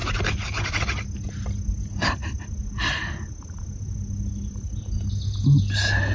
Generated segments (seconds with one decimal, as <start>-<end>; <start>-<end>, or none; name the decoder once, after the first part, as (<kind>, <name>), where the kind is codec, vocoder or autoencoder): none

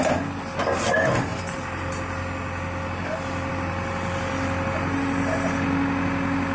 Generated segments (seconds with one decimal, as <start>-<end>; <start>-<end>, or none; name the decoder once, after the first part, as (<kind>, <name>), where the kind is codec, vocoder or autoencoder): none

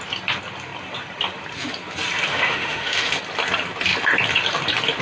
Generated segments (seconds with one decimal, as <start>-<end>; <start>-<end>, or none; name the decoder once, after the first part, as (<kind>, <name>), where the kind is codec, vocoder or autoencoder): 2.3-3.1 (autoencoder, DAC-VAE)

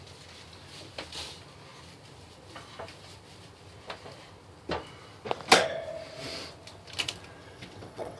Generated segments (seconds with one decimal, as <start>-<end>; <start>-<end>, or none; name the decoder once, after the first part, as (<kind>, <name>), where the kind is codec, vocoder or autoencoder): 7.4-8.2 (vocoder, WaveNeXt)

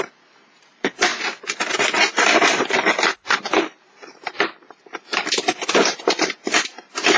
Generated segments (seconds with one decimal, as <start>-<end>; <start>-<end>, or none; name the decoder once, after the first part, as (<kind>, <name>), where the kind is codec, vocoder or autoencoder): 0.0-7.2 (vocoder, BigVGAN v2)

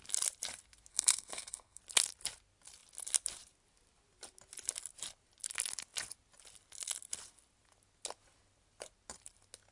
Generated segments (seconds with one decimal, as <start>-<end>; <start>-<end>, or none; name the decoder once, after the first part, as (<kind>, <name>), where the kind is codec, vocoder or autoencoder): 0.9-1.8 (codec, SNAC)